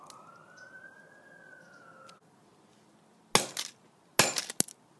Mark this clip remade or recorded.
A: recorded